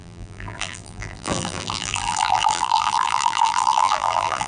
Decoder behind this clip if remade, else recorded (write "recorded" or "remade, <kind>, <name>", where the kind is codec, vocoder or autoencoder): remade, vocoder, BigVGAN v2